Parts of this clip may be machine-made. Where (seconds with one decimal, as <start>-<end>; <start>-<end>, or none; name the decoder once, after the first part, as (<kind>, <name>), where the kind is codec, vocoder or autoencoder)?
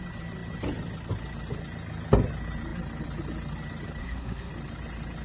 4.0-4.5 (codec, SNAC)